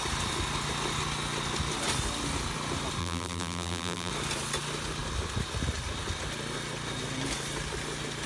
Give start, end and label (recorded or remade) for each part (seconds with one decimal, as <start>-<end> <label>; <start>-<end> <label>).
0.0-3.0 recorded; 3.0-4.1 remade; 4.1-8.3 recorded

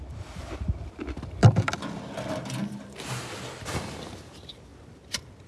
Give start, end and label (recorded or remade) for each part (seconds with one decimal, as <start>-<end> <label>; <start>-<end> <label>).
0.0-1.4 recorded; 1.4-3.4 remade; 3.4-4.7 recorded; 4.7-5.5 remade

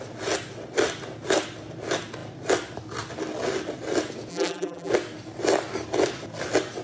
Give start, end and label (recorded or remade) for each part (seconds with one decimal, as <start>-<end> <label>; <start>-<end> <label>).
0.0-4.3 recorded; 4.3-4.9 remade; 4.9-6.8 recorded

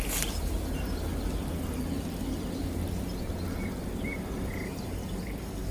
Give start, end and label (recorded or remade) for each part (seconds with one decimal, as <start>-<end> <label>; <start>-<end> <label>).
0.0-1.1 remade; 1.1-2.5 recorded; 2.5-5.7 remade

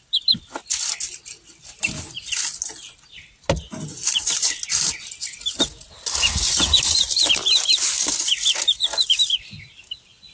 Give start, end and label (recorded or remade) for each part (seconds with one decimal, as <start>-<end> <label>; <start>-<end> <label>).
0.0-10.3 recorded

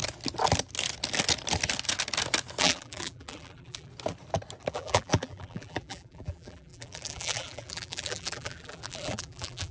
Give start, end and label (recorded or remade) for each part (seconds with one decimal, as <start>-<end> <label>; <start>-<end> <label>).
0.0-2.6 recorded; 2.6-3.9 remade; 3.9-4.7 recorded; 4.7-9.7 remade